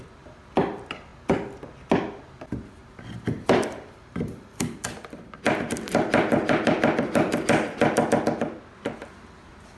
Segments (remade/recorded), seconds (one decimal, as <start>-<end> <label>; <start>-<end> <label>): 0.0-1.1 remade; 1.1-2.3 recorded; 2.3-2.8 remade; 2.8-3.4 recorded; 3.4-9.8 remade